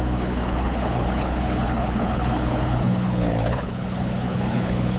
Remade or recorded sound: remade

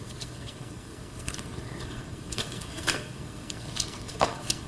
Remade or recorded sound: remade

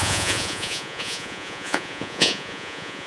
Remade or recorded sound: remade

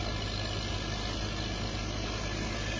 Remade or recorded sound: recorded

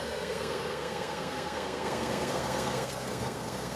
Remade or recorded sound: remade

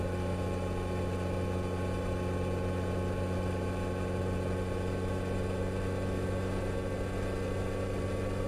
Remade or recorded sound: recorded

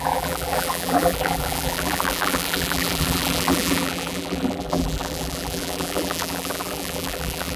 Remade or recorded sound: remade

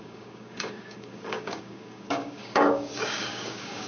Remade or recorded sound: remade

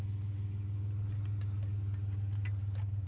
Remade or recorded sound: recorded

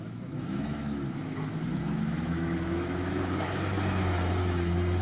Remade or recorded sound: remade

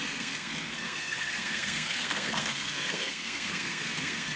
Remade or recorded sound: remade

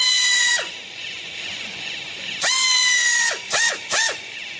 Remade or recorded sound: remade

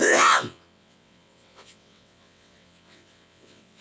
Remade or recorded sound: remade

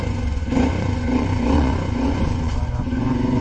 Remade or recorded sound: remade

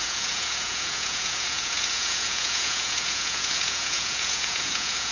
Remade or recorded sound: remade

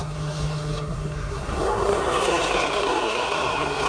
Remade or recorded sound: remade